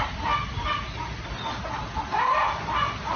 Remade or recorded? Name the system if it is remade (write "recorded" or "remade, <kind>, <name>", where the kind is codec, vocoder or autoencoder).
recorded